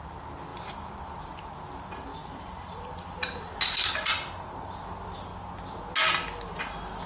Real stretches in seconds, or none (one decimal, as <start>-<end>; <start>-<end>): 0.0-2.1; 3.5-7.1